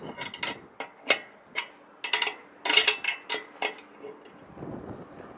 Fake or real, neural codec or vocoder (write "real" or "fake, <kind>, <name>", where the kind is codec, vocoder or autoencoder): real